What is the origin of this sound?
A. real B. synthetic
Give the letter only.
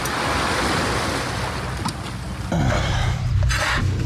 A